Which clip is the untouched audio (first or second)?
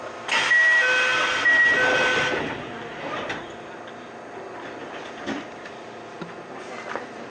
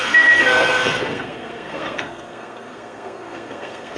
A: first